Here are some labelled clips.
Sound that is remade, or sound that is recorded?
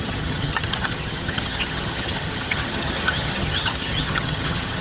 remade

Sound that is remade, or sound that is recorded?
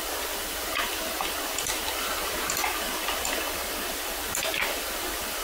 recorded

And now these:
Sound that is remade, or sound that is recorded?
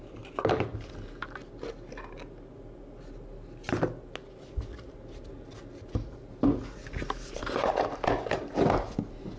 recorded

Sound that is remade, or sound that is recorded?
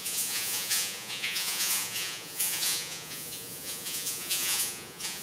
remade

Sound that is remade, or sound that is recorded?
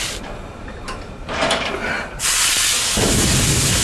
recorded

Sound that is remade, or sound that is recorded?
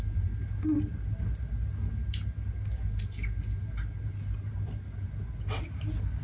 recorded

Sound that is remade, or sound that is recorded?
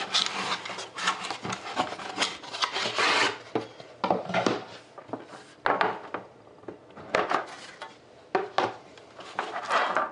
recorded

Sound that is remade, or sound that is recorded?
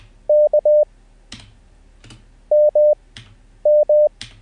recorded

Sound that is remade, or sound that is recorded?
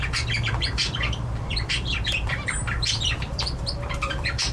remade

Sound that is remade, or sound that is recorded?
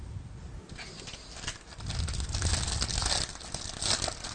recorded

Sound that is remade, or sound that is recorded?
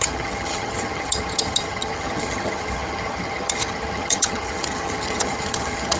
remade